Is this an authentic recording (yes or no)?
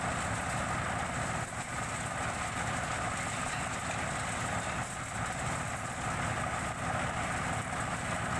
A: yes